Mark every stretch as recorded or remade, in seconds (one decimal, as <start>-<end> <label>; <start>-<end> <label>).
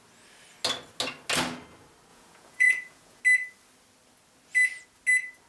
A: 0.0-2.1 recorded; 2.1-3.2 remade; 3.2-5.5 recorded